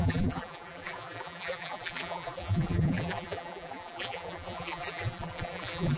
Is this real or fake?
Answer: fake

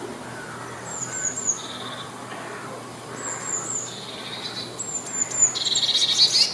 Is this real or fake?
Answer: real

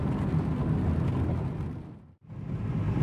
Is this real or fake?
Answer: real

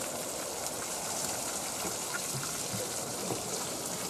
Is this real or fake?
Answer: fake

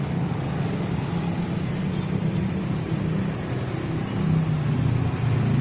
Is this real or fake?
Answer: real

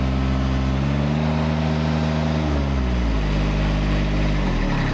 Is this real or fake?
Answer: real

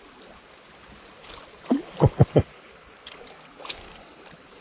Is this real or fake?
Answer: fake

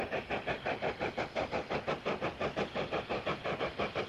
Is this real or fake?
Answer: real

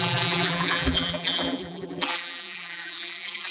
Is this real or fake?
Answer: fake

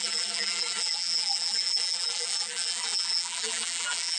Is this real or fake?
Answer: fake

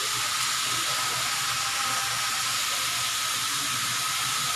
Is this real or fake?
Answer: real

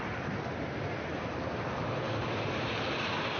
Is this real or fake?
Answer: fake